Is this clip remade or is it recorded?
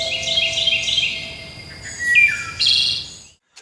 recorded